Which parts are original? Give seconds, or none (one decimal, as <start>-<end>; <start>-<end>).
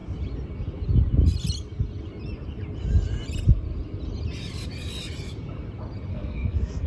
0.0-6.1